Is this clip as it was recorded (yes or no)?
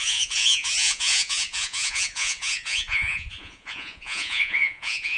no